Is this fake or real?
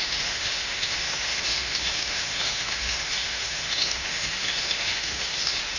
fake